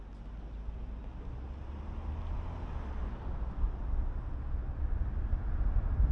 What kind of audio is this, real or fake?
real